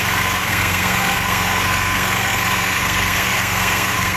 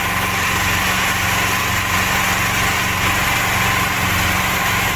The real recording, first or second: second